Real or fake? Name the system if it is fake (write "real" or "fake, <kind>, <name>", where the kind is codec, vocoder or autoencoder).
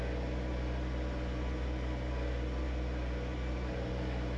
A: real